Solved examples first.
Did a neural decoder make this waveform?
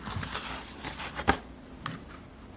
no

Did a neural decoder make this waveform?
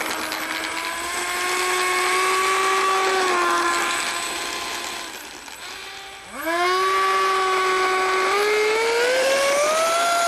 no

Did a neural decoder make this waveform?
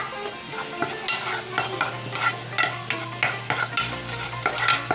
no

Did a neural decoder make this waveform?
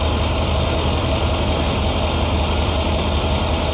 no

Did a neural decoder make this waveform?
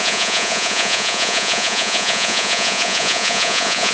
yes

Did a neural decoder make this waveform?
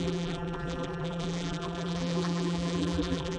yes